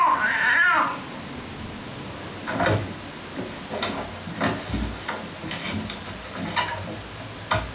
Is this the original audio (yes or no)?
yes